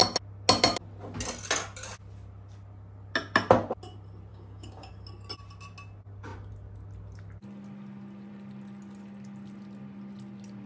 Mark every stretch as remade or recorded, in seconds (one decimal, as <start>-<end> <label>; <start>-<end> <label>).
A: 0.0-4.3 recorded; 4.3-4.9 remade; 4.9-10.7 recorded